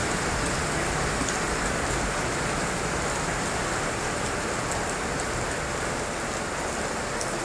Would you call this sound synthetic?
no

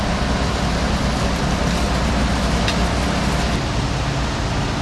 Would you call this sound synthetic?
no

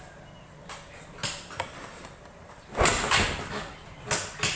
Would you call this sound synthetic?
no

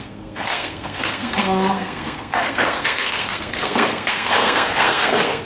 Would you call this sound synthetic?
yes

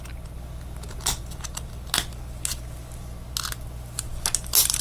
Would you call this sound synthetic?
no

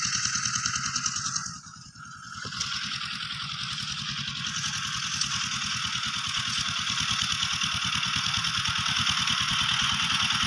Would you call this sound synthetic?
yes